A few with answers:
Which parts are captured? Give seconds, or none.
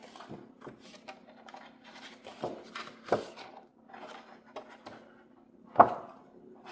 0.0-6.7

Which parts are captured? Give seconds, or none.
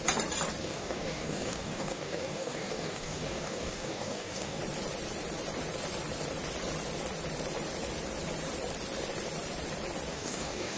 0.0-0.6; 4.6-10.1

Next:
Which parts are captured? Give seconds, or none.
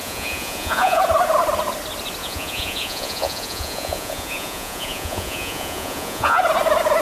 1.0-2.2; 6.4-7.0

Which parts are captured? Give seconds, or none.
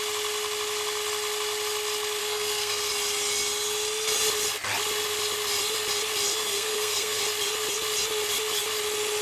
0.0-2.2; 2.9-6.3; 7.2-9.2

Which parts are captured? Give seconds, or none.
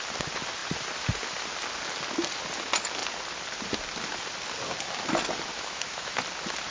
0.0-5.5; 6.2-6.7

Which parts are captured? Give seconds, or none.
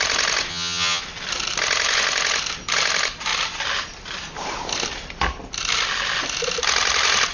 0.0-0.5; 1.0-7.3